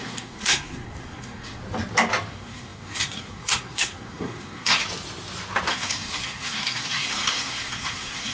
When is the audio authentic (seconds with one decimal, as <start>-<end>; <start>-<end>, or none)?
1.6-2.3; 4.8-5.7